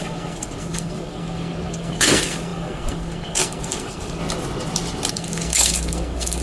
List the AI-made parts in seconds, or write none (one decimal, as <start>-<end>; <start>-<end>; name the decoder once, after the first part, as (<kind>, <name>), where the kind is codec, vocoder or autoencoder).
0.0-4.2 (codec, SNAC); 5.1-6.4